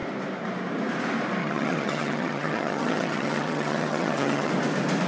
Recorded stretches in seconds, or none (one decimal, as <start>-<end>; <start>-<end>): 0.0-1.4; 4.5-5.1